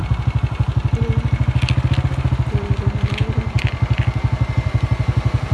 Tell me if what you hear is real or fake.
real